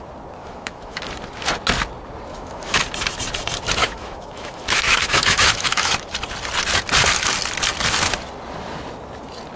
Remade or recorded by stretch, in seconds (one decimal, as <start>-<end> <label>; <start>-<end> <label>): 0.0-0.4 recorded; 0.4-1.0 remade; 1.0-2.3 recorded; 2.3-2.8 remade; 2.8-3.8 recorded; 3.8-5.9 remade; 5.9-9.6 recorded